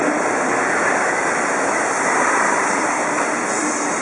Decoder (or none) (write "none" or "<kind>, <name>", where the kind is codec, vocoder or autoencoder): none